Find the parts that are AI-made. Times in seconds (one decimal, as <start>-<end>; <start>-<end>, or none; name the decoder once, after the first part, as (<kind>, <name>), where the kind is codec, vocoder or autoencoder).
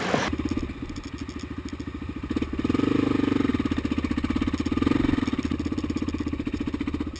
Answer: none